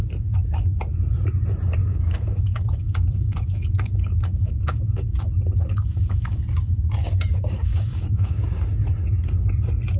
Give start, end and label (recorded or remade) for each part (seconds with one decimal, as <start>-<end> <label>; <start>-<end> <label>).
0.0-1.8 recorded; 1.8-5.3 remade; 5.3-5.7 recorded; 5.7-6.4 remade; 6.4-7.0 recorded; 7.0-8.5 remade; 8.5-10.0 recorded